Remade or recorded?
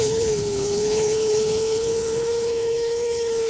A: remade